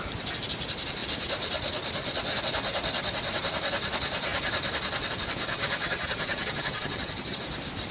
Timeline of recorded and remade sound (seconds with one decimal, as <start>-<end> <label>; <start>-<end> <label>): 0.0-5.5 recorded; 5.5-7.4 remade; 7.4-7.9 recorded